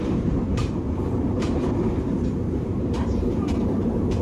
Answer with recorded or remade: remade